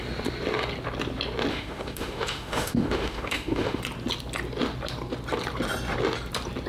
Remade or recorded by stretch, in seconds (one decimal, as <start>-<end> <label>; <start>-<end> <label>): 0.0-1.5 recorded; 1.5-3.8 remade; 3.8-6.7 recorded